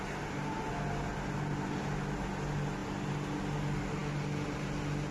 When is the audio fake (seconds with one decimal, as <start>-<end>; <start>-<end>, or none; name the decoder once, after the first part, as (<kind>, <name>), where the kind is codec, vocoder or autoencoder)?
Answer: none